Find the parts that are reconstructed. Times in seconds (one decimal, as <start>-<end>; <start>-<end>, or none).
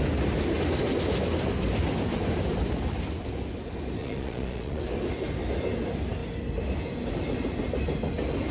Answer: 4.0-4.8